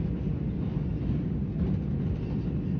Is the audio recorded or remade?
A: recorded